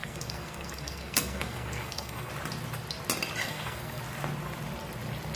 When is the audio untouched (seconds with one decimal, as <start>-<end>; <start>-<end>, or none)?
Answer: 2.3-3.4; 4.0-5.4